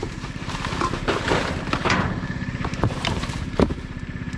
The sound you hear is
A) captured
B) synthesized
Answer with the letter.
B